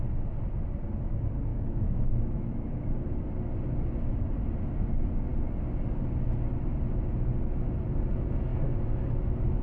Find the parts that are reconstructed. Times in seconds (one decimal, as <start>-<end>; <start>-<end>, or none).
1.5-3.2